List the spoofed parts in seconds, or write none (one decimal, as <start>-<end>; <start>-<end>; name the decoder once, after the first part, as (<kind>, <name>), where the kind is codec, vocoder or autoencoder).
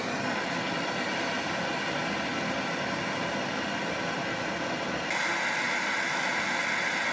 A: none